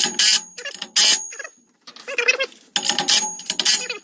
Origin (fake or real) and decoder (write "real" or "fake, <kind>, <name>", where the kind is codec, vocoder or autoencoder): real